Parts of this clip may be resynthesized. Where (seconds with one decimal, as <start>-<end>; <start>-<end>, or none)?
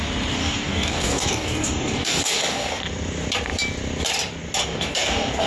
0.4-2.8; 4.6-5.5